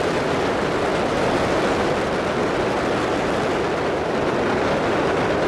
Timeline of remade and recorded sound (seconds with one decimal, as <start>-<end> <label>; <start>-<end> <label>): 0.0-0.9 remade; 0.9-3.9 recorded; 3.9-5.5 remade